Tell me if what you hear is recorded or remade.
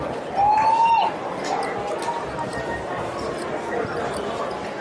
recorded